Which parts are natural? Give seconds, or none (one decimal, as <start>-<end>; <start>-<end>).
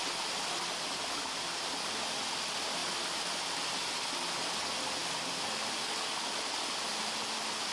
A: 0.0-7.7